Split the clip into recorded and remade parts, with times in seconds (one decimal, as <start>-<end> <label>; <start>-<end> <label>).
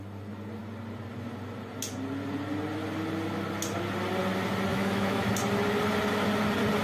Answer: 0.0-4.7 recorded; 4.7-5.3 remade; 5.3-6.8 recorded